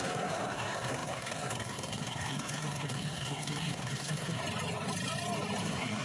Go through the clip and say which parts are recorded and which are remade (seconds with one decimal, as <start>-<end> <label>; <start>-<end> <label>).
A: 0.0-4.4 remade; 4.4-5.6 recorded; 5.6-6.0 remade